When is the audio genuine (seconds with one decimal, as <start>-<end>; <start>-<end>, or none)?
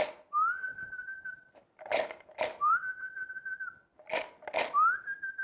0.0-0.7; 3.3-5.4